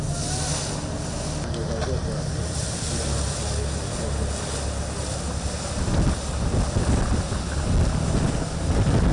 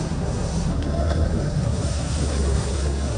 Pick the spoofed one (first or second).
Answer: second